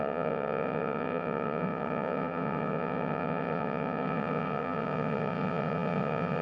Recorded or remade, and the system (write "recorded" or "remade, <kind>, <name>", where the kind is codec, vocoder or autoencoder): remade, vocoder, WaveNeXt